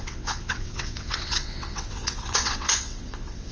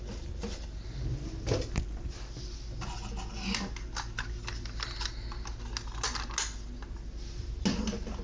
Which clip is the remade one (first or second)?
first